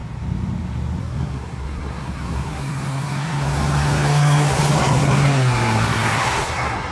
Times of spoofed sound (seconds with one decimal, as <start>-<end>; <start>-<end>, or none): 1.0-6.9